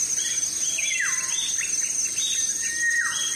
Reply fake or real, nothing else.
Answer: real